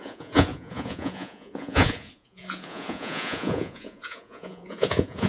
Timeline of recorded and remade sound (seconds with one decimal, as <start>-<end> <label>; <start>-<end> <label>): 0.0-5.3 remade